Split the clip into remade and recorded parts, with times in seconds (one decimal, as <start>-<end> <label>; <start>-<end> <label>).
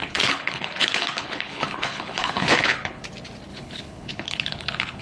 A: 0.0-3.0 remade; 3.0-3.5 recorded; 3.5-5.0 remade